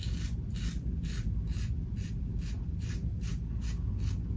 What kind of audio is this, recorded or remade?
recorded